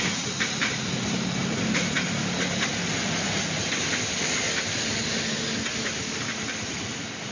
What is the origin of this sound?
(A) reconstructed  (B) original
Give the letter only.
B